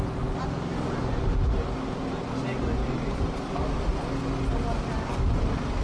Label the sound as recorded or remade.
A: recorded